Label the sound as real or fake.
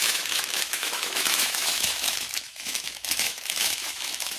fake